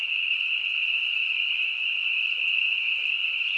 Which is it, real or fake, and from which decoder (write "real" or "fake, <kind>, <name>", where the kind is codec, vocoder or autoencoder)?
real